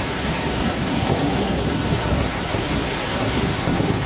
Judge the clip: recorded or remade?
remade